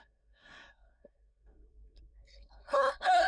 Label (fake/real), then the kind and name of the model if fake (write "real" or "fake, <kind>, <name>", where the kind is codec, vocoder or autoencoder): fake, codec, SNAC